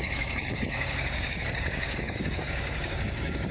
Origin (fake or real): fake